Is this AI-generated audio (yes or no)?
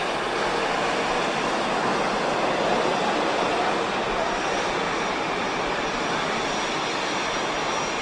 no